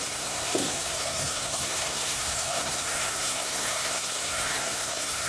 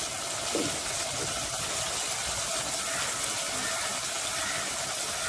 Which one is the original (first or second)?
second